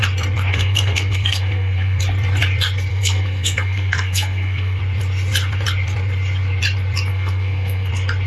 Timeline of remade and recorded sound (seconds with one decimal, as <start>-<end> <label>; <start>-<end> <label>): 0.0-0.5 recorded; 0.5-2.0 remade; 2.0-2.9 recorded; 2.9-4.8 remade; 4.8-7.1 recorded; 7.1-7.9 remade; 7.9-8.3 recorded

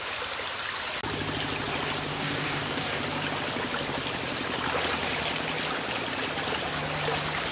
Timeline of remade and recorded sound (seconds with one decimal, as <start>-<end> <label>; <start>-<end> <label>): 0.0-2.1 recorded; 2.1-3.0 remade; 3.0-7.5 recorded